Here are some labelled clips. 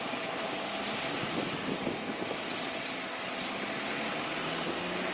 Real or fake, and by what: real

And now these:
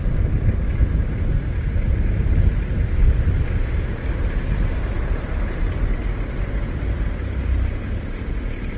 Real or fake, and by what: fake, vocoder, BigVGAN v2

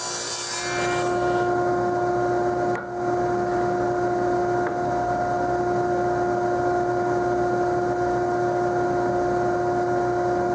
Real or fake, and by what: real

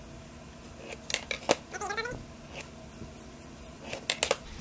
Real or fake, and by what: real